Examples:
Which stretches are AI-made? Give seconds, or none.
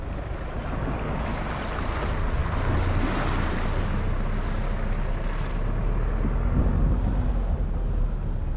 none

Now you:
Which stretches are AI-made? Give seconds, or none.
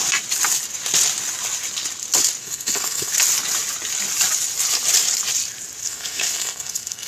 2.4-3.1; 5.8-7.1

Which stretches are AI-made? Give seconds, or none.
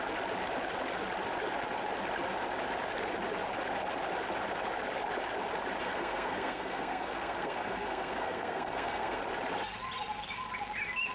5.8-9.2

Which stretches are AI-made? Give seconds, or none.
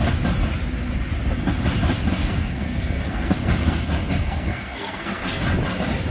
2.2-5.4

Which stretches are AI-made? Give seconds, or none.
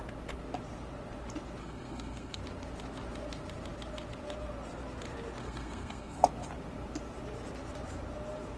1.6-2.4; 5.4-6.2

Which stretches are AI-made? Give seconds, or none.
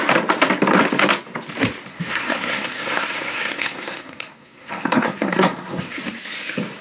1.9-6.0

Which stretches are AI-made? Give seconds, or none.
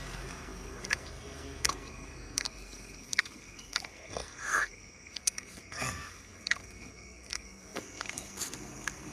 0.0-9.1